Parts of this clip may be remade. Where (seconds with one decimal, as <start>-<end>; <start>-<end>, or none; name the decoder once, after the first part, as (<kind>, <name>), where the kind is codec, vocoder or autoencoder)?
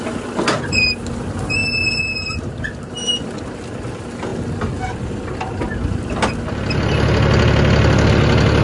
none